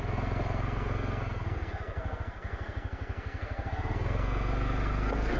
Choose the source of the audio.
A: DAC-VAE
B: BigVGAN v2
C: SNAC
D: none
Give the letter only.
C